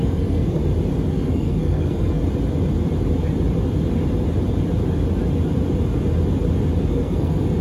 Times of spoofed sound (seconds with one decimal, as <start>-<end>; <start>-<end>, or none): 0.0-0.6; 1.1-2.2; 6.8-7.6